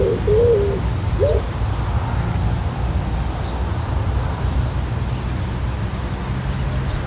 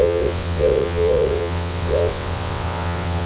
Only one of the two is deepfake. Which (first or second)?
second